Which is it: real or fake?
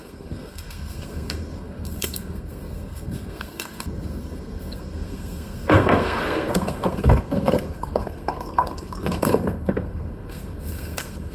fake